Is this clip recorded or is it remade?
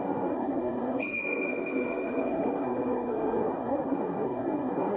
remade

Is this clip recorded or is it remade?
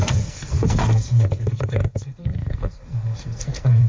remade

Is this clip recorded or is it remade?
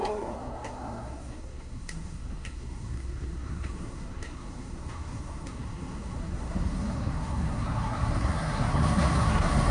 remade